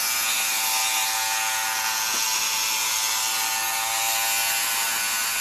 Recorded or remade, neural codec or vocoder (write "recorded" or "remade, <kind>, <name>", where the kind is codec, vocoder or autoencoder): recorded